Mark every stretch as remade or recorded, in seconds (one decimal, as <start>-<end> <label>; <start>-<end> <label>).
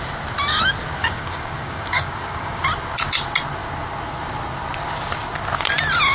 0.0-1.0 recorded; 1.0-2.6 remade; 2.6-6.1 recorded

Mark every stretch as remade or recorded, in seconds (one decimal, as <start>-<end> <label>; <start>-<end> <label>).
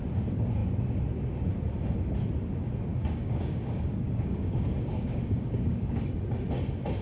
0.0-2.9 recorded; 2.9-5.9 remade; 5.9-7.0 recorded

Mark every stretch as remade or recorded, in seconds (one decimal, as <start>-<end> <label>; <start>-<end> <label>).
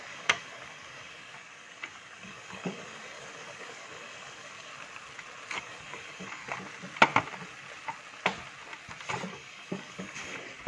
0.0-4.7 remade; 4.7-5.6 recorded; 5.6-6.4 remade; 6.4-9.3 recorded; 9.3-10.7 remade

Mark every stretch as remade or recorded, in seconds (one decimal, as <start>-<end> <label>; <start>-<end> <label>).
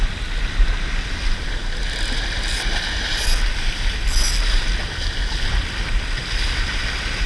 0.0-7.3 recorded